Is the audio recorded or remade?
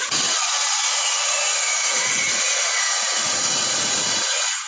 remade